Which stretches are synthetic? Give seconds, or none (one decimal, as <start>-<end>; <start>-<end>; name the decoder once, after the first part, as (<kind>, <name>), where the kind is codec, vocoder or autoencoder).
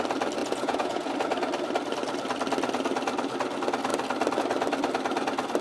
0.4-1.1 (vocoder, Vocos)